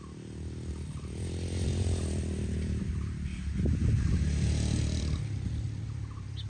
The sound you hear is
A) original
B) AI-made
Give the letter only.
B